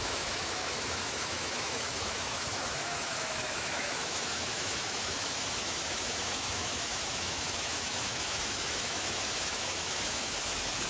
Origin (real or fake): fake